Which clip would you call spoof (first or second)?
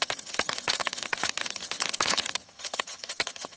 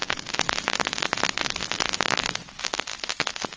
first